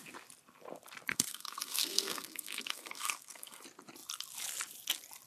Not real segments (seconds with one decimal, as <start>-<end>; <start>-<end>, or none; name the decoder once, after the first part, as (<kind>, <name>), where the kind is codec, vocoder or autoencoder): 1.1-3.6 (codec, SNAC)